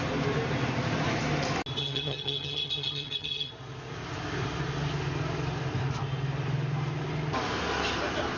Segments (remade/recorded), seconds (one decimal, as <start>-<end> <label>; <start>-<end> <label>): 0.0-1.8 recorded; 1.8-3.5 remade; 3.5-8.4 recorded